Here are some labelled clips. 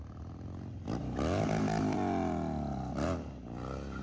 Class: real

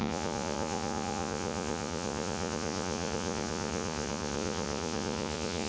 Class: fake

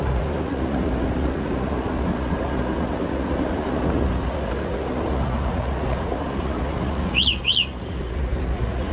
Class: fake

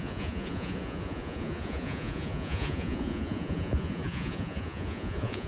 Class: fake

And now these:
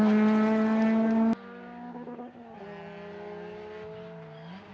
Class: real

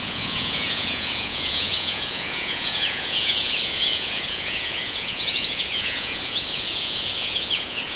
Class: fake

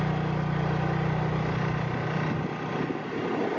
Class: real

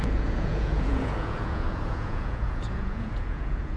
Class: fake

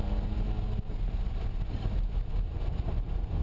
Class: real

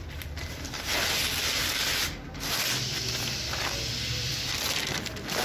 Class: real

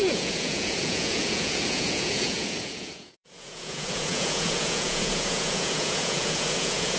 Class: fake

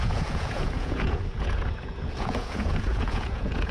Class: fake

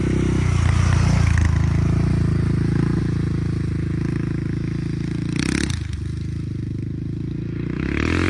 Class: real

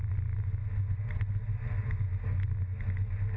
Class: real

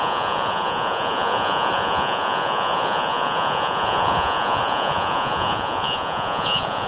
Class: fake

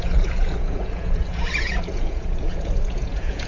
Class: fake